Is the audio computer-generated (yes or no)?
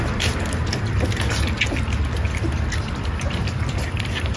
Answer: no